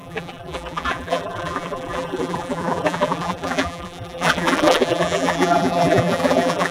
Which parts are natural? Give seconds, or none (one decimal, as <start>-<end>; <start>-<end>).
none